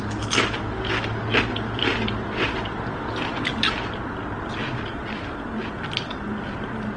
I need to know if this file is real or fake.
real